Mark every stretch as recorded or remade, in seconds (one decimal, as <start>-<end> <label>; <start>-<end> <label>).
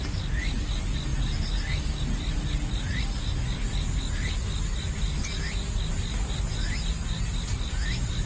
0.0-8.3 recorded